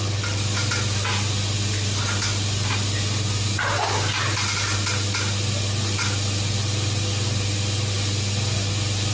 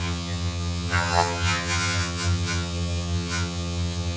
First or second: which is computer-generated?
second